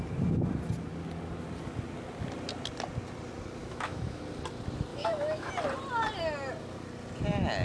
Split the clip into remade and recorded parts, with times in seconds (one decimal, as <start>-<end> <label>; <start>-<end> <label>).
0.0-3.6 recorded; 3.6-4.2 remade; 4.2-4.9 recorded; 4.9-5.5 remade; 5.5-7.6 recorded